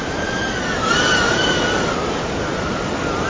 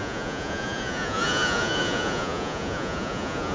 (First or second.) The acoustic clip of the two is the first